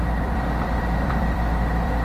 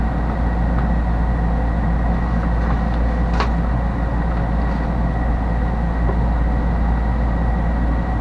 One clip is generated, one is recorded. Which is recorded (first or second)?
second